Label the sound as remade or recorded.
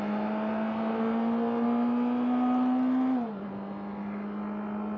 recorded